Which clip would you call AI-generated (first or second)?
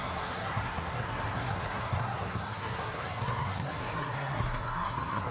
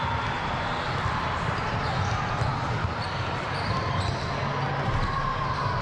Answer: first